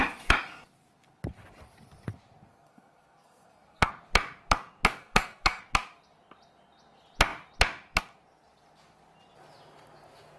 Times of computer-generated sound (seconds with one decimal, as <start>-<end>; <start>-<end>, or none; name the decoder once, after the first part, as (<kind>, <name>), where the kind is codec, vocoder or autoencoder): 2.5-3.9 (codec, SNAC); 5.0-5.6